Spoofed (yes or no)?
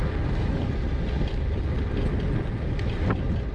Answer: no